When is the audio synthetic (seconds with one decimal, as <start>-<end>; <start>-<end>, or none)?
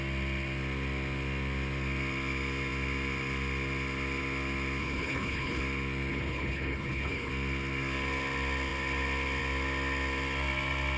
4.8-5.6; 6.1-7.3